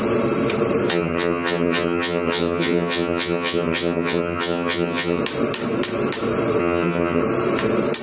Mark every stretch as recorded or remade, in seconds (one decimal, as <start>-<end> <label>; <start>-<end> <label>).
0.0-0.9 recorded; 0.9-5.2 remade; 5.2-6.6 recorded; 6.6-7.2 remade; 7.2-8.0 recorded